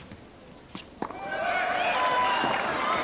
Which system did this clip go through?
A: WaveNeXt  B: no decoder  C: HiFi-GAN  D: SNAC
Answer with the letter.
B